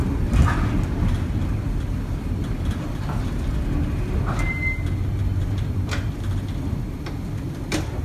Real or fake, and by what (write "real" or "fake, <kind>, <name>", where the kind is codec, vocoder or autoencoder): real